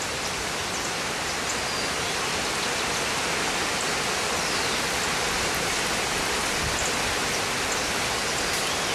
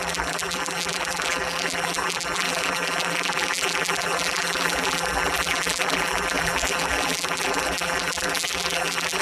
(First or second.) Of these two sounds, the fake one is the second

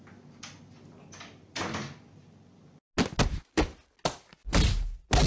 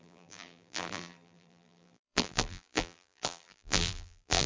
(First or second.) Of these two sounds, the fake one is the second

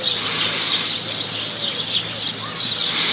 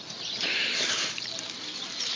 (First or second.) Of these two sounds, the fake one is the second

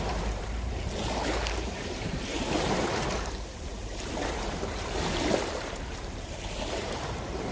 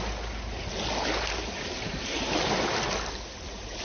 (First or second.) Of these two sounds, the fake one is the first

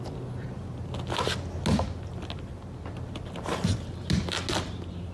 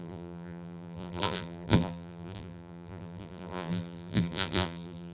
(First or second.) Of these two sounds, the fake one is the second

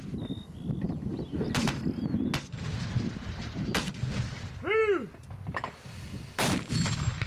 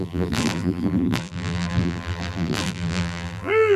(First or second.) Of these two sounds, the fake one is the second